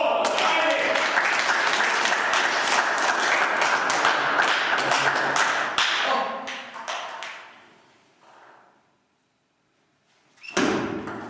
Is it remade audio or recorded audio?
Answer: recorded